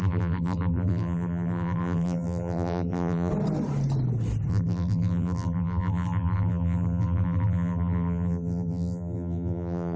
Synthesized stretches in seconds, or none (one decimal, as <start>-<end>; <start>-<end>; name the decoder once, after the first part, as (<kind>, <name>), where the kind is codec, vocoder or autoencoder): 0.0-3.3 (vocoder, BigVGAN v2); 4.5-10.0